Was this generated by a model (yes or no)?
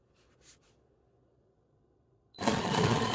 yes